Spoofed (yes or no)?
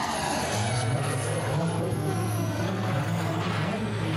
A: yes